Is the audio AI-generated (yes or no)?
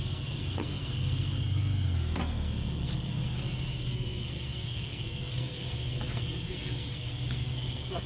yes